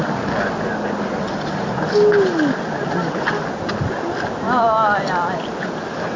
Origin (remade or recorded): recorded